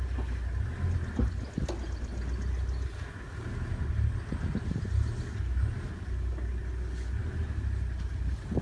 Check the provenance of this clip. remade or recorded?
recorded